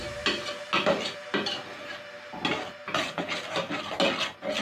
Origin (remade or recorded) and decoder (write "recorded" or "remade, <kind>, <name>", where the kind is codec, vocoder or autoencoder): recorded